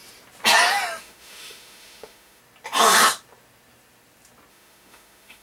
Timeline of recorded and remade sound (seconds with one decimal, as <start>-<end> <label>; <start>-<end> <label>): 0.0-1.0 recorded; 1.0-2.4 remade; 2.4-4.5 recorded; 4.5-5.4 remade